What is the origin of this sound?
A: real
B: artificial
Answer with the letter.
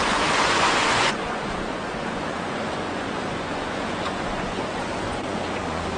B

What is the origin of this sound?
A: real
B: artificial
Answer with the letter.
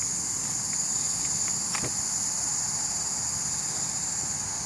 A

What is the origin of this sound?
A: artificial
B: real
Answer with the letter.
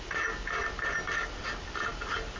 B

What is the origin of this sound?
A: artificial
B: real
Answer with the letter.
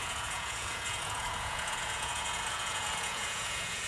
A